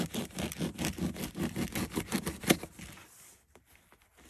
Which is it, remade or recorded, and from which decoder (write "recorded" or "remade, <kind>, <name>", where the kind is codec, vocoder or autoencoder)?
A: recorded